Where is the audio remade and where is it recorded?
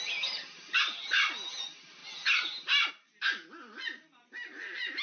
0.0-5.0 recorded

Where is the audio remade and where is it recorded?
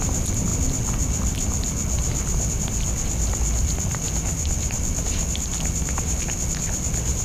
0.0-7.2 recorded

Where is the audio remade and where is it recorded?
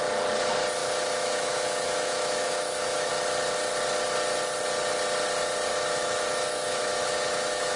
0.0-0.8 recorded; 0.8-3.1 remade; 3.1-5.7 recorded; 5.7-7.8 remade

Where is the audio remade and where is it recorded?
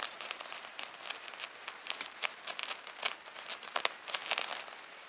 0.0-0.7 remade; 0.7-1.8 recorded; 1.8-2.6 remade; 2.6-3.5 recorded; 3.5-4.2 remade; 4.2-5.1 recorded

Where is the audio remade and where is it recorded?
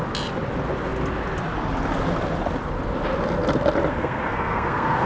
0.0-3.9 recorded; 3.9-5.1 remade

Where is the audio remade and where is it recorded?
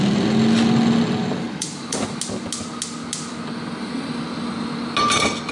0.0-1.2 recorded; 1.2-2.2 remade; 2.2-5.5 recorded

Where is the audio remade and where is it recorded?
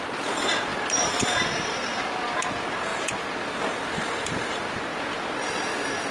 0.0-6.1 recorded